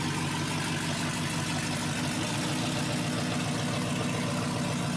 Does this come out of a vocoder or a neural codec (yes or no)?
no